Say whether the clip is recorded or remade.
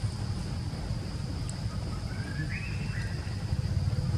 recorded